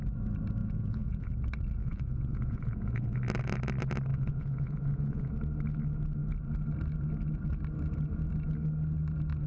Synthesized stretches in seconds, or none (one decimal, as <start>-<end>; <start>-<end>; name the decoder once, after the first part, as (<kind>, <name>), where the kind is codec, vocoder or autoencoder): 0.6-1.3 (vocoder, Vocos); 1.8-3.2; 4.1-5.3